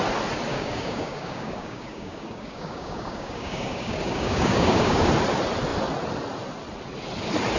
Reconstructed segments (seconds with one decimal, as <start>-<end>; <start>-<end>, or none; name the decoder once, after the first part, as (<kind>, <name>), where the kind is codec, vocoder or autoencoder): 0.5-5.1 (codec, DAC)

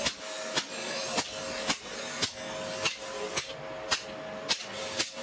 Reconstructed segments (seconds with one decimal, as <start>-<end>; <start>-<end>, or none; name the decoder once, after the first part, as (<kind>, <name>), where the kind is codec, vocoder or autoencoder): none

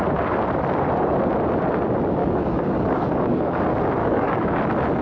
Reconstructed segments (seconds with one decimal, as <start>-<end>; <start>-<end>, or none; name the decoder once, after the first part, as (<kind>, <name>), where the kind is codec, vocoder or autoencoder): 2.2-3.6 (codec, DAC); 4.0-4.6

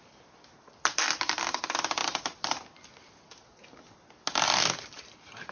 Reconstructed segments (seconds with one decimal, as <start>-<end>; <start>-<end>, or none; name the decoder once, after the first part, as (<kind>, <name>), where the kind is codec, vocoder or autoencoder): none

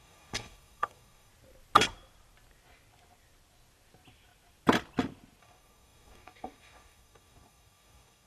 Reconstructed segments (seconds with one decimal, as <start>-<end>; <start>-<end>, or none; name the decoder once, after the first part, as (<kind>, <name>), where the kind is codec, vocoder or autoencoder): 0.0-1.3 (codec, DAC); 5.4-8.3

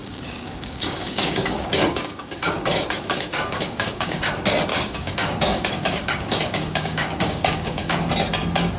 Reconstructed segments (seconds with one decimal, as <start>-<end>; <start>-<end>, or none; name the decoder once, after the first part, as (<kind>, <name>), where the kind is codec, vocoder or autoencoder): 0.0-4.3 (codec, DAC); 4.7-8.1

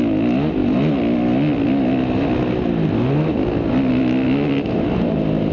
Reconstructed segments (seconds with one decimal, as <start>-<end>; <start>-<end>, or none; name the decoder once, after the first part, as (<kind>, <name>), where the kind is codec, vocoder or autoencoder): none

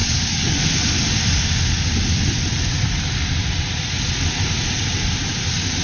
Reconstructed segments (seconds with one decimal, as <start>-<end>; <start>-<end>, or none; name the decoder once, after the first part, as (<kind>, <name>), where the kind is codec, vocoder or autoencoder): 0.0-0.6 (codec, DAC)